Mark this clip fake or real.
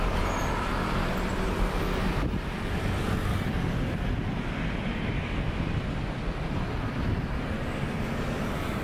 real